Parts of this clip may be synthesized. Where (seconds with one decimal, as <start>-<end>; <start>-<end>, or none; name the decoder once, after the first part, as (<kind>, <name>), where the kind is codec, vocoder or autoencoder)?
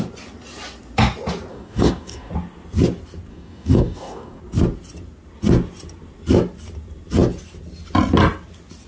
1.5-2.3 (codec, DAC); 3.3-4.4